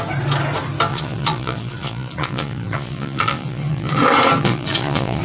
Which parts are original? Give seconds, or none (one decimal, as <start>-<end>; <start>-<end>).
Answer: 0.0-0.9; 4.0-4.4